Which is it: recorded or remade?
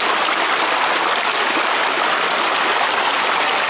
recorded